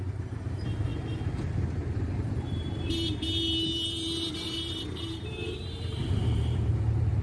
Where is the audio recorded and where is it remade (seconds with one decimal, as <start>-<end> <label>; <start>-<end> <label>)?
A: 0.0-0.9 remade; 0.9-2.2 recorded; 2.2-7.2 remade